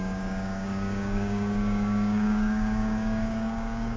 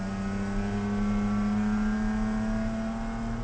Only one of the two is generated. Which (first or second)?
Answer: first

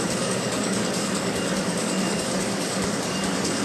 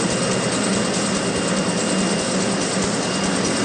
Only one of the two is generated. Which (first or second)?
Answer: first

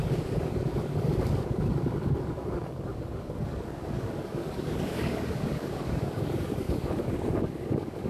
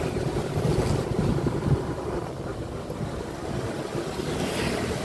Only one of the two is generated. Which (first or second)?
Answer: first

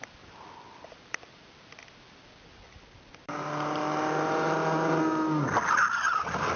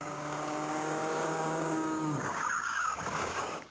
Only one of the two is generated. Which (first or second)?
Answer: second